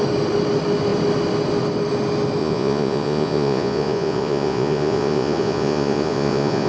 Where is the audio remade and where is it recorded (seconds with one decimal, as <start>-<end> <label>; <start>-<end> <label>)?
0.0-2.4 recorded; 2.4-6.7 remade